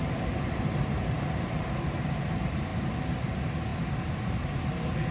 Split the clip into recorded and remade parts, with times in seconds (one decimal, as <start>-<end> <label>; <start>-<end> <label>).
0.0-5.1 recorded